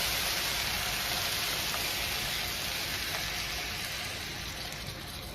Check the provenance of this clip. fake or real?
real